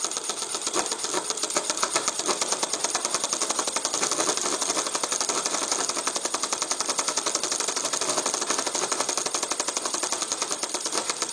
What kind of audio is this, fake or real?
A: real